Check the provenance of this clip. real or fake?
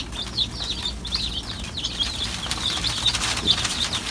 real